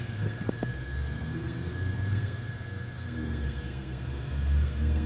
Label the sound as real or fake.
fake